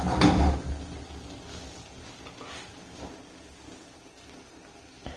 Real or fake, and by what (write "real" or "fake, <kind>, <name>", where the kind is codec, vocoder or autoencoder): real